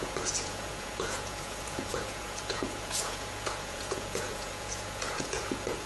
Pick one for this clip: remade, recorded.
remade